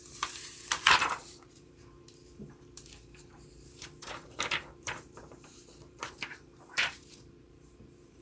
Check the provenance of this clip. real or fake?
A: fake